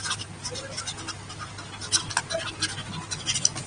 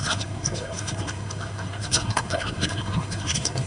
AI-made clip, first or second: second